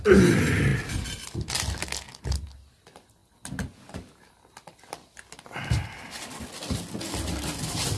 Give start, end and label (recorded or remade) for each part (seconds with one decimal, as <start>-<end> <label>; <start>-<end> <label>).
0.0-8.0 recorded